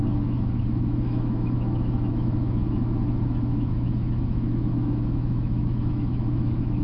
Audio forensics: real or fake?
fake